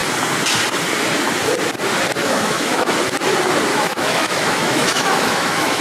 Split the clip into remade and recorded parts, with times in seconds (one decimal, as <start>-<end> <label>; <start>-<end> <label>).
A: 0.0-2.2 recorded; 2.2-2.9 remade; 2.9-3.7 recorded; 3.7-5.8 remade